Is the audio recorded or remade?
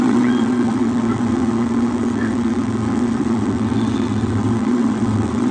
remade